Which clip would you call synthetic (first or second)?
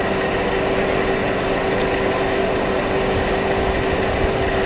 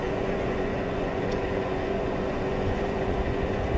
second